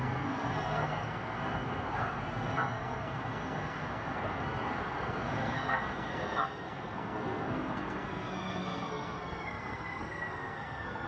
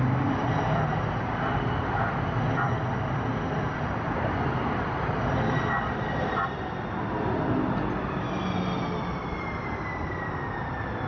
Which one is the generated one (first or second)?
first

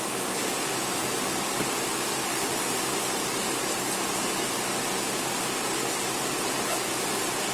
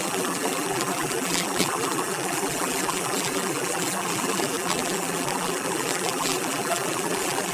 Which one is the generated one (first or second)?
second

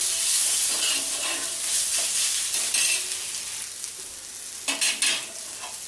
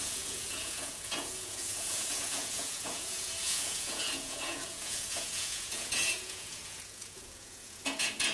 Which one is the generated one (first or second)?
second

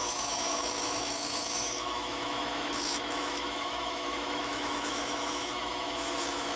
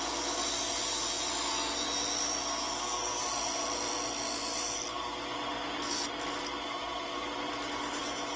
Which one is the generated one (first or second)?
first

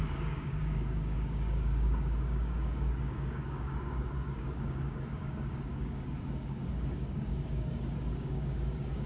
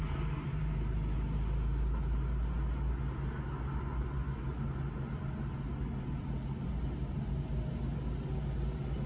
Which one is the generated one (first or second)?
first